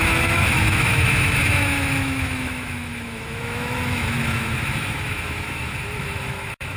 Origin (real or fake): fake